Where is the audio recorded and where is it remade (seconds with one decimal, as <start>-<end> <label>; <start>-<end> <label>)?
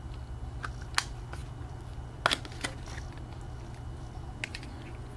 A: 0.0-4.5 recorded; 4.5-5.2 remade